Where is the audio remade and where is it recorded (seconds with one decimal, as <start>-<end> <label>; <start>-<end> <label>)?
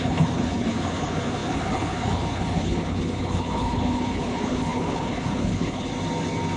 0.0-5.9 remade; 5.9-6.6 recorded